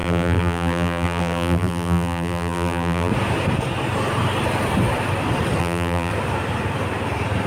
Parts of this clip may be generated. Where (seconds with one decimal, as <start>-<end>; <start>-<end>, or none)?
0.0-3.1; 5.6-6.1